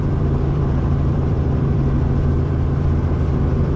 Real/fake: fake